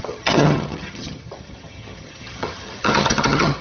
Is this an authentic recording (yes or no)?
no